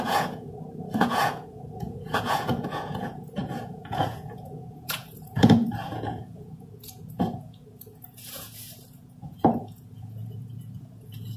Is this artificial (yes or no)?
yes